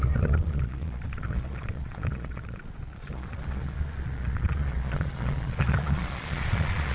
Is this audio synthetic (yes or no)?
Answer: yes